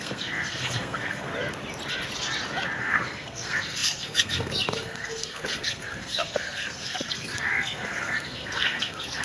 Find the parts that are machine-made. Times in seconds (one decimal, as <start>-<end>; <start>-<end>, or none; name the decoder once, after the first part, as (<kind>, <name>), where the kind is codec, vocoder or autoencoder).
0.0-1.3 (codec, SNAC); 2.8-9.2